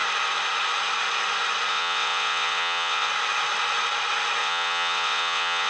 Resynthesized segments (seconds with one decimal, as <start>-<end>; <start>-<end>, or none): 1.7-3.1; 4.4-5.7

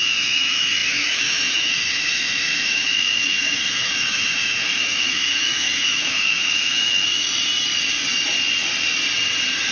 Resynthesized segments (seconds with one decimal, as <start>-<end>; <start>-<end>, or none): 0.0-7.3

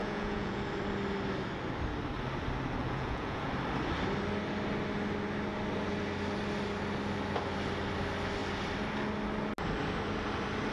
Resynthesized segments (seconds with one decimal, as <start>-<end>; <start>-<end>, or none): 0.0-0.6; 2.8-3.5

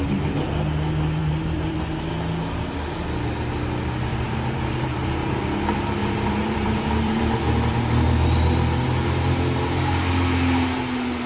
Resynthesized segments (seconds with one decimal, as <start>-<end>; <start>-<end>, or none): 1.2-1.8; 4.1-5.4; 6.0-7.2

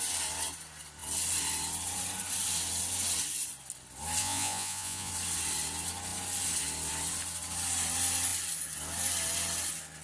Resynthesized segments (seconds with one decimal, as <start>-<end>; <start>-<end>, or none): 4.2-5.1

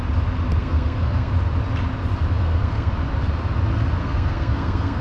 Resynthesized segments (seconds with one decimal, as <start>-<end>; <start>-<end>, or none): 0.6-1.3; 2.4-2.9; 4.0-5.0